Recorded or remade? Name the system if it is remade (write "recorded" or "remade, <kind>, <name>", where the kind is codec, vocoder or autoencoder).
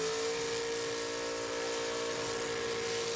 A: recorded